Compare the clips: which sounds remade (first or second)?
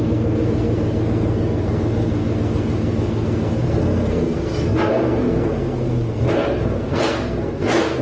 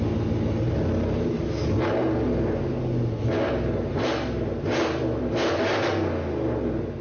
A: first